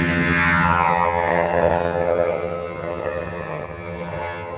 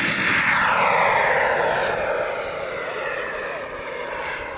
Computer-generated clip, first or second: first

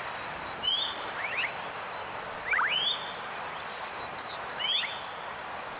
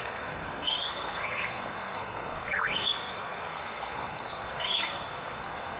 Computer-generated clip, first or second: second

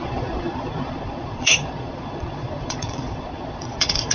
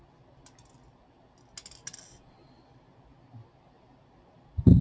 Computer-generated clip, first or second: first